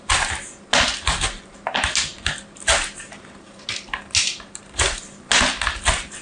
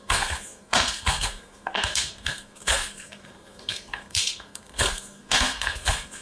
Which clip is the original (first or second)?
first